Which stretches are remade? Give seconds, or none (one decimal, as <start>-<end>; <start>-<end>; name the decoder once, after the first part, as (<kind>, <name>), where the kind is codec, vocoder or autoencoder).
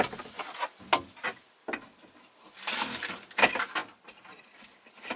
none